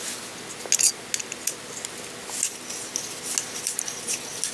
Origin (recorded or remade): recorded